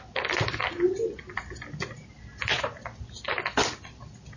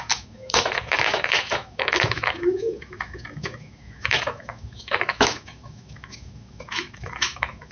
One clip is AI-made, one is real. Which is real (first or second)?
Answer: first